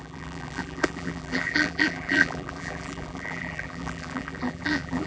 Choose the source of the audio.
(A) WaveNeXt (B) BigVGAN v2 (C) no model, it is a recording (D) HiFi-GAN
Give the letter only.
B